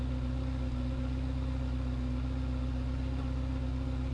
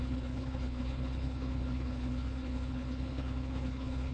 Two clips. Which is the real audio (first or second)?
first